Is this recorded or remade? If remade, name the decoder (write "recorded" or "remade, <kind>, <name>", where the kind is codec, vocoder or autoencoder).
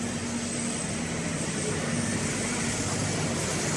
recorded